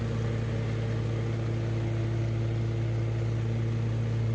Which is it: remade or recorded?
recorded